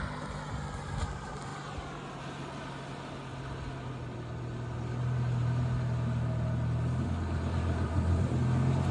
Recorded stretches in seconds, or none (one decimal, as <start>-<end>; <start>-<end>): 0.0-8.9